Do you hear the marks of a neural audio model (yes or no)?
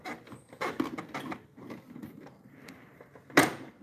no